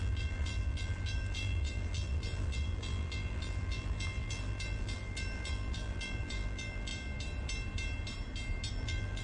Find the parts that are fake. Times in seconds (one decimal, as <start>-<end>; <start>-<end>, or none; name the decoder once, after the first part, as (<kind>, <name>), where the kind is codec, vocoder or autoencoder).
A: 0.0-6.9 (vocoder, BigVGAN v2); 8.7-9.2